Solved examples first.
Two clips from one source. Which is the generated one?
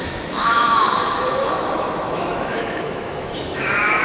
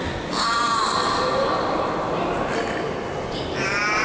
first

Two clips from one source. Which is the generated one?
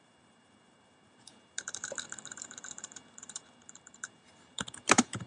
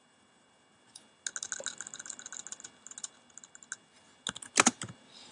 first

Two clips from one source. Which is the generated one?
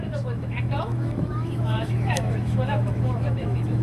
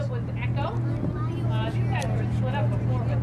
first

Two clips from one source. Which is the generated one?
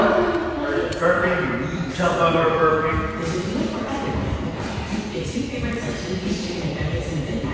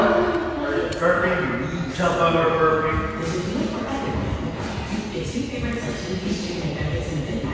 first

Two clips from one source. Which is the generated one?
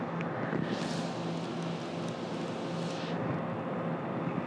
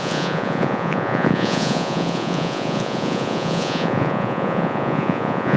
second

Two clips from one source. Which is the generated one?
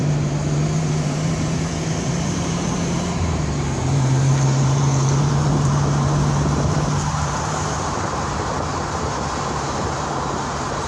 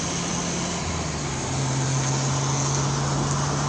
first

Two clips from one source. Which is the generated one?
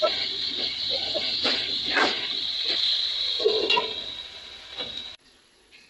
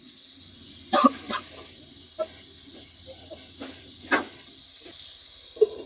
first